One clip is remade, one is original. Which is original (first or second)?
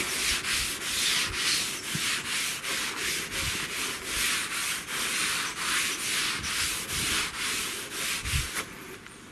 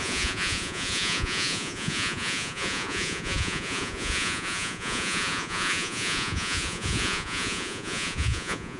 first